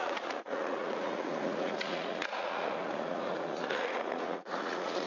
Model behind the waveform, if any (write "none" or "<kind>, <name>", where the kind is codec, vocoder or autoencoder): vocoder, Vocos